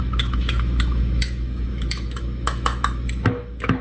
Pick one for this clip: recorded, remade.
remade